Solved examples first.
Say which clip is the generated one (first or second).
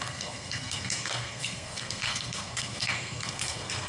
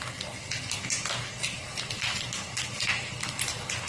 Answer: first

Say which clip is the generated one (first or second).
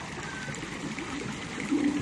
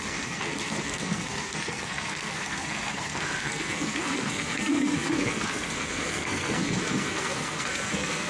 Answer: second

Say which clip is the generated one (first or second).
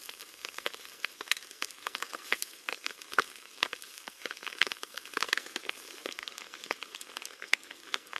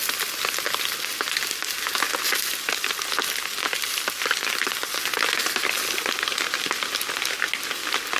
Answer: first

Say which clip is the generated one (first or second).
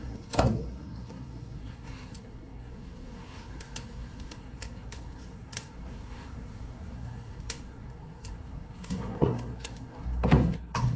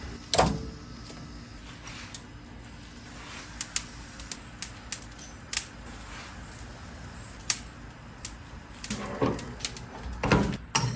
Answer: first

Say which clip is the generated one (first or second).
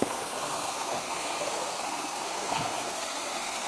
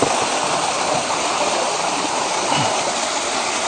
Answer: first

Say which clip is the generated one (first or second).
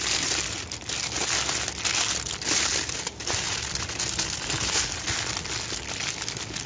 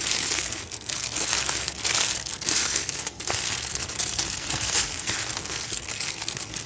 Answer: second